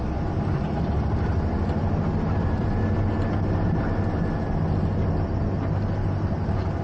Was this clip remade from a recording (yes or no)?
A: no